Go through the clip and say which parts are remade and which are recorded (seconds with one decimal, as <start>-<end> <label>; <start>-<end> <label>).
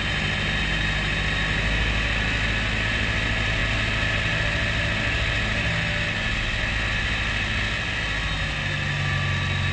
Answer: 0.0-9.7 recorded